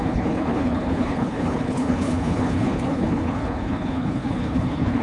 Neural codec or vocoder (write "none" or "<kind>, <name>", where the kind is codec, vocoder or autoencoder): codec, HILCodec